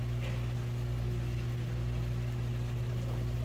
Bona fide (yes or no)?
yes